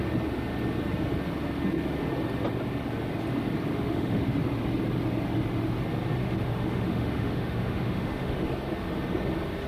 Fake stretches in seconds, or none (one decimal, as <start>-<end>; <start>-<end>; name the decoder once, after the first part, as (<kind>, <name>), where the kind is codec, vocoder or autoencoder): 3.7-4.2 (autoencoder, DAC-VAE); 6.2-8.5